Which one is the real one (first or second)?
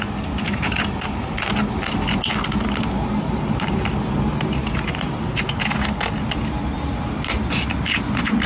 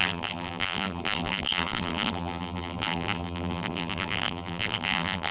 first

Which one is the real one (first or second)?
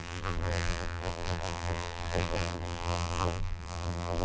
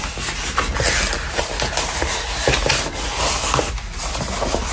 second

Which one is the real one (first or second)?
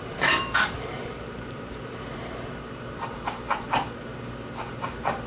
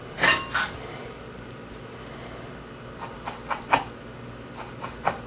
second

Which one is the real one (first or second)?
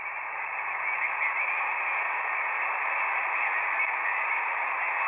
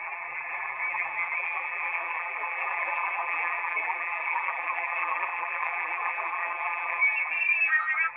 first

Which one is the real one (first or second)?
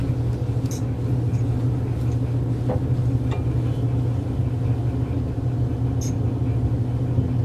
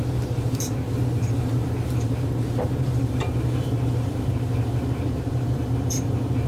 first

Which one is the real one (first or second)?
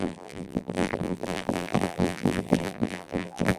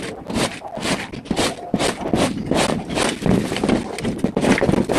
second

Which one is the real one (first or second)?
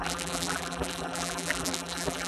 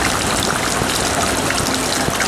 second